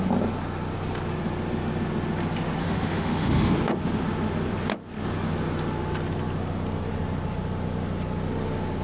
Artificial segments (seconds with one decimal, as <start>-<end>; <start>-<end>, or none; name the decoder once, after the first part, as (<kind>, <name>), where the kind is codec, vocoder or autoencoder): 2.6-3.5 (autoencoder, DAC-VAE)